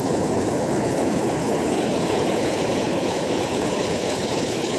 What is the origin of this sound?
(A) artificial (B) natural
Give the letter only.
A